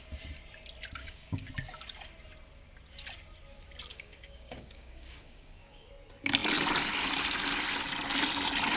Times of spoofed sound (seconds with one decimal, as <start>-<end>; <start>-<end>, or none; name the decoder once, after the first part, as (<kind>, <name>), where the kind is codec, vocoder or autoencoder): 1.0-1.5 (codec, DAC); 3.9-5.9